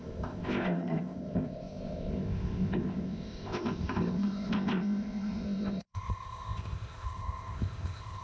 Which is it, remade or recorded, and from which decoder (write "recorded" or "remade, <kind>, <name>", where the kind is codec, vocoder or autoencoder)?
remade, codec, ZipCodec